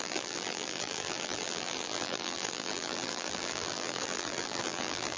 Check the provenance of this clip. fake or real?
fake